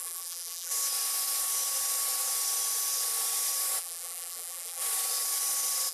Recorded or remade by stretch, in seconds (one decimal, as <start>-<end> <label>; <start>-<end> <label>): 0.0-0.7 remade; 0.7-3.8 recorded; 3.8-4.8 remade; 4.8-5.9 recorded